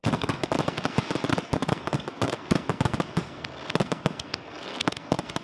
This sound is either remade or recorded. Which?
remade